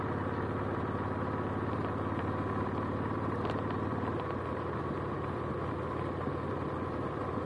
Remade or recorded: recorded